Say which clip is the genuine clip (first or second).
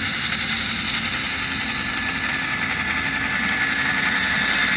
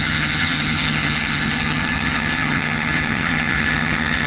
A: first